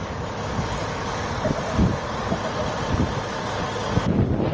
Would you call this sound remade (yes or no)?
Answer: no